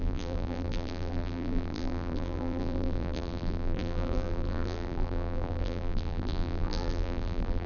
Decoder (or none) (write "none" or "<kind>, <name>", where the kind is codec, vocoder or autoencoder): vocoder, BigVGAN v2